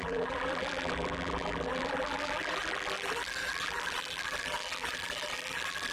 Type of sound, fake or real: fake